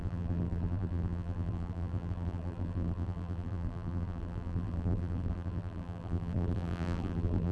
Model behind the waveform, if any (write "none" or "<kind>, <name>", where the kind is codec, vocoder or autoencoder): vocoder, BigVGAN v2